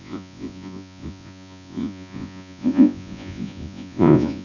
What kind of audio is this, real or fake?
fake